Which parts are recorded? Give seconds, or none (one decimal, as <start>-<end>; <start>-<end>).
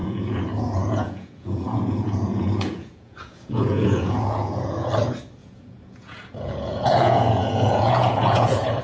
4.9-5.4